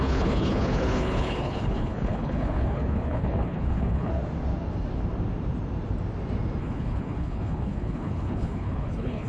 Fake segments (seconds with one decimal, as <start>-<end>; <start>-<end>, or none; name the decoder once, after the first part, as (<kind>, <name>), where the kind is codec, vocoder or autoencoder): 0.0-4.1 (codec, HILCodec); 6.6-9.3